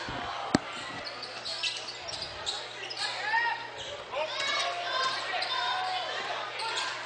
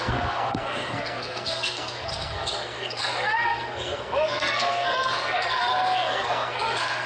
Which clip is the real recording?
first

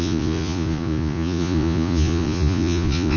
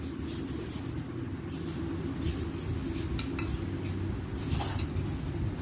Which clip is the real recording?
second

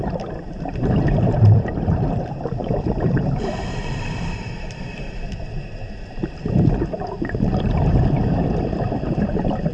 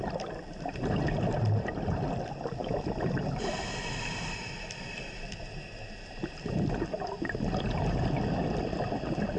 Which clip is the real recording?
second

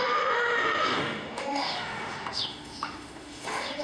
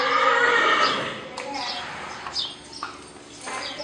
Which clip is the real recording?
second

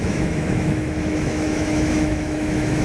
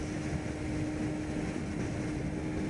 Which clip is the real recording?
second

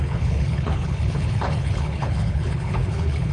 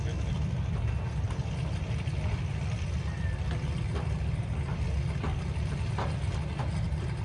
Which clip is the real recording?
second